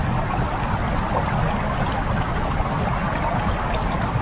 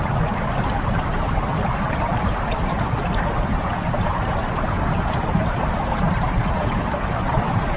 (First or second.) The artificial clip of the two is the second